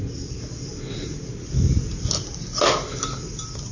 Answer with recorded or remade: recorded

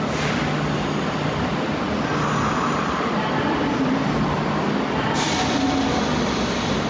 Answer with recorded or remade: recorded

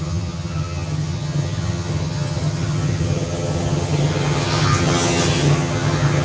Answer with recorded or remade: remade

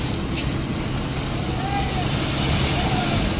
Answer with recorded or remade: recorded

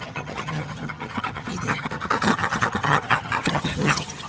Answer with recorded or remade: remade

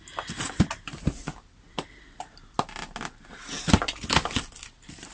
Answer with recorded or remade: recorded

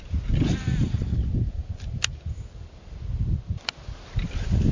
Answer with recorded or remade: recorded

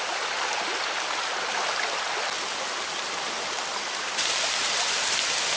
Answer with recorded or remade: recorded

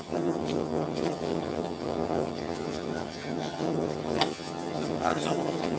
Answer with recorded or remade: remade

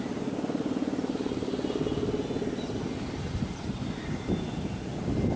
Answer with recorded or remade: recorded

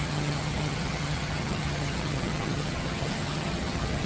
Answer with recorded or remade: remade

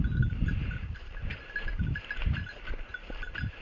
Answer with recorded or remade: recorded